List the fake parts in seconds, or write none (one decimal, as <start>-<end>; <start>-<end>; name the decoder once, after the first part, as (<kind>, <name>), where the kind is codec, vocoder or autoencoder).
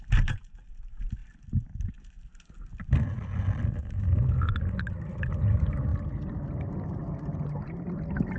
2.7-3.7 (vocoder, BigVGAN v2)